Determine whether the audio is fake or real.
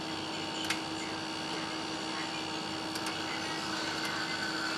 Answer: real